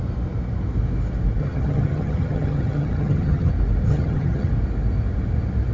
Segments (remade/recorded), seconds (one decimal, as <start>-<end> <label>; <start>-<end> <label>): 0.0-1.4 recorded; 1.4-3.5 remade; 3.5-3.9 recorded; 3.9-4.5 remade; 4.5-5.7 recorded